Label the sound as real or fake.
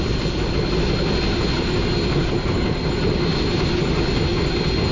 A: real